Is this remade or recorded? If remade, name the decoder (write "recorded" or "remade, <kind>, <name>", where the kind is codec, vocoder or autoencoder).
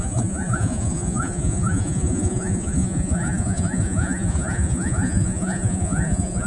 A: remade, vocoder, Vocos